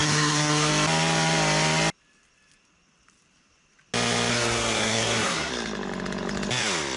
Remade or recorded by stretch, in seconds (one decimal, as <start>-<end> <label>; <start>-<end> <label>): 0.0-0.7 remade; 0.7-4.3 recorded; 4.3-5.5 remade; 5.5-7.0 recorded